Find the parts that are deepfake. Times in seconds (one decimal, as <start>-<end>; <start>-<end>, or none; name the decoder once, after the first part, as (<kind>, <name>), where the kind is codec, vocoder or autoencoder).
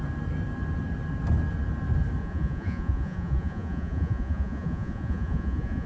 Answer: 2.2-5.9 (vocoder, Vocos)